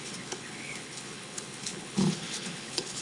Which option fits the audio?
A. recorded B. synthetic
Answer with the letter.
B